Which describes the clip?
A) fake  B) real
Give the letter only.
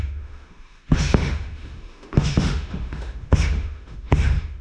A